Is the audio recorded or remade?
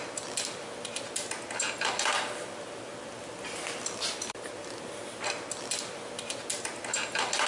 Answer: recorded